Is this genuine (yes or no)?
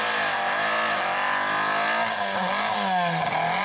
yes